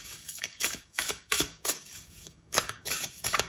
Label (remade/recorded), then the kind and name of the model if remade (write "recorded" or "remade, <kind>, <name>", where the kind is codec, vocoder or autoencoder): remade, codec, DAC